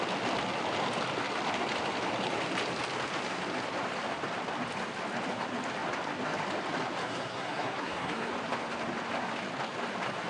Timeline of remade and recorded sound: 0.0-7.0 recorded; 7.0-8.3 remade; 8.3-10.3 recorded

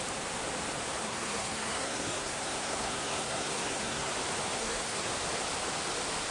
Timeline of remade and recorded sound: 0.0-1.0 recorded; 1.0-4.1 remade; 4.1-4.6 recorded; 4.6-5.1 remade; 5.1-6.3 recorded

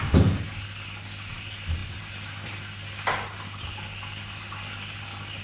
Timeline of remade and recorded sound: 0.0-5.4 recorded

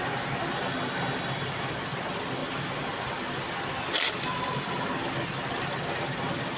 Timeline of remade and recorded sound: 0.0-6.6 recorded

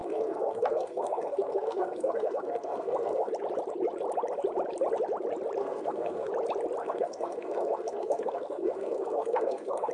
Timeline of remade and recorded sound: 0.0-3.3 remade; 3.3-5.6 recorded; 5.6-6.3 remade; 6.3-6.8 recorded; 6.8-9.9 remade

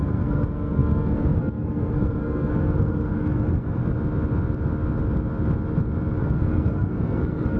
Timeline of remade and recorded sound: 0.0-3.8 remade; 3.8-6.2 recorded; 6.2-7.6 remade